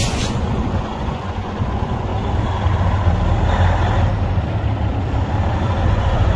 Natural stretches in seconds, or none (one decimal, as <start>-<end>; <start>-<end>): 2.1-5.9